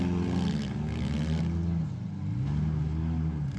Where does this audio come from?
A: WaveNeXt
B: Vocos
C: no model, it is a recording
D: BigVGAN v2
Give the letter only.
C